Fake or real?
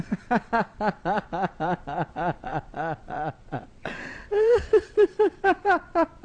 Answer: fake